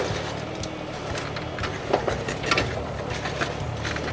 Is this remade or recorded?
recorded